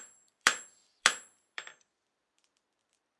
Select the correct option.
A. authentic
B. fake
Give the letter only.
B